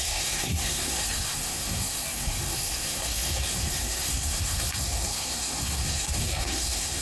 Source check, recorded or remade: remade